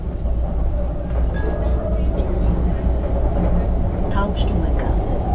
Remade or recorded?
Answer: recorded